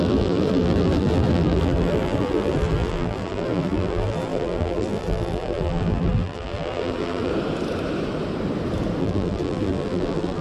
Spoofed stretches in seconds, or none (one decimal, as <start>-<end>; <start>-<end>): 0.0-7.3; 9.0-10.4